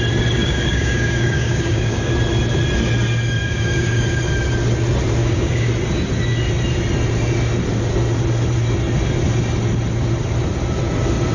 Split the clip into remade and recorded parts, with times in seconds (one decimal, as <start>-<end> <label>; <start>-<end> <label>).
0.0-0.4 recorded; 0.4-2.1 remade; 2.1-3.4 recorded; 3.4-4.2 remade; 4.2-5.2 recorded; 5.2-5.7 remade; 5.7-11.3 recorded